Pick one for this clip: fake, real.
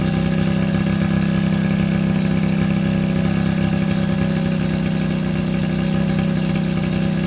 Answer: real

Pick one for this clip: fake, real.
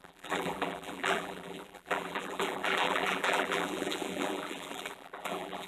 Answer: fake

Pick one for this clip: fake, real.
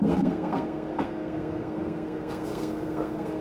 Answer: fake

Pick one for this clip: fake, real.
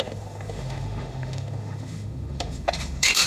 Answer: fake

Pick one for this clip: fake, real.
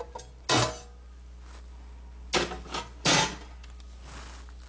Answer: real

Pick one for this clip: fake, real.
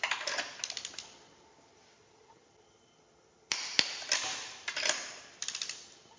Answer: real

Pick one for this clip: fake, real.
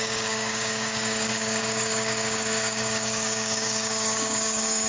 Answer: fake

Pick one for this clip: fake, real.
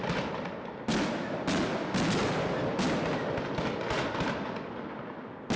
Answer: real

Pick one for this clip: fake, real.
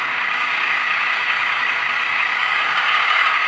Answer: fake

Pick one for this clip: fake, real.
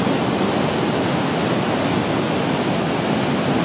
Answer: real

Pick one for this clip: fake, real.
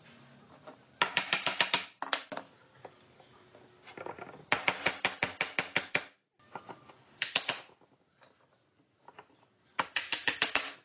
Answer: real